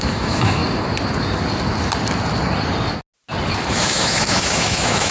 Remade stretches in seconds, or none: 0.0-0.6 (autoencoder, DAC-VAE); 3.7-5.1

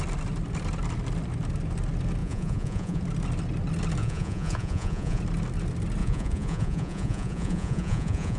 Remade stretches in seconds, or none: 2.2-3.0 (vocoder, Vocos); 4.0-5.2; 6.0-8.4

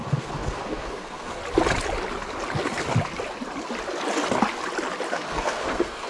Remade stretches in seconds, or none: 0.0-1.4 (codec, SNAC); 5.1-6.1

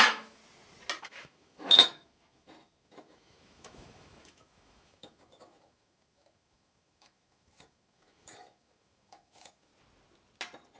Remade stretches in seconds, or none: 0.0-0.4 (autoencoder, DAC-VAE); 1.0-9.7